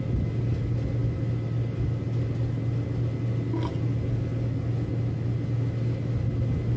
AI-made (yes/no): no